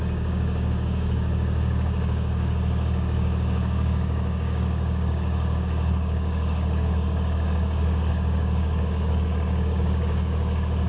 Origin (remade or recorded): remade